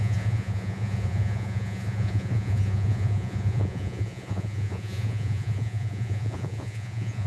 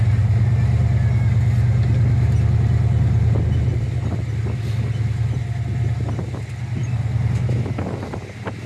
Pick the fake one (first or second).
first